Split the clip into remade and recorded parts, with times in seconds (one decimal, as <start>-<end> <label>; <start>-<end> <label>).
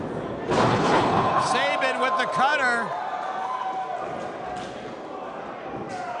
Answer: 0.0-0.7 recorded; 0.7-1.5 remade; 1.5-6.2 recorded